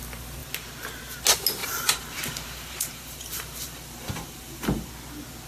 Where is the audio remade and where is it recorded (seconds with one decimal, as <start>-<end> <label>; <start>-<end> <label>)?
0.0-1.6 recorded; 1.6-4.9 remade; 4.9-5.5 recorded